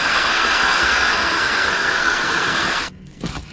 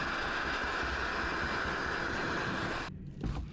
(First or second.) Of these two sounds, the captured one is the second